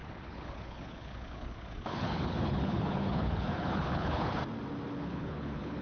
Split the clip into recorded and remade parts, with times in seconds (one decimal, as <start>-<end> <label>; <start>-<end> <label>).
0.0-4.4 remade; 4.4-5.0 recorded; 5.0-5.8 remade